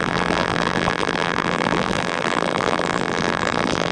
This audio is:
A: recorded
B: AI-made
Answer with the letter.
B